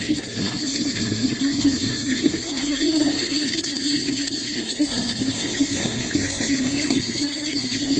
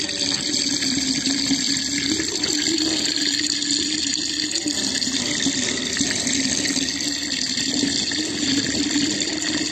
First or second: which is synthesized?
first